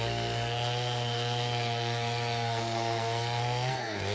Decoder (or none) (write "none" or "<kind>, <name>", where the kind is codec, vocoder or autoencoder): codec, SNAC